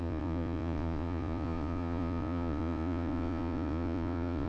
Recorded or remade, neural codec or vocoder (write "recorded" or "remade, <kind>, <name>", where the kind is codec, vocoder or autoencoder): remade, vocoder, Vocos